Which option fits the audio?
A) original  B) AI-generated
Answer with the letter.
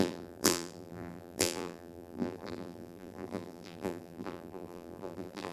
B